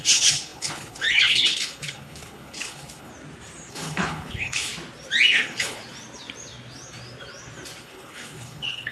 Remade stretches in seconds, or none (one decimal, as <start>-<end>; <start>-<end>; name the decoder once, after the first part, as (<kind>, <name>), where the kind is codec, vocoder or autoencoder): 0.0-3.1 (codec, HILCodec); 3.7-4.7; 5.3-5.8; 7.8-8.9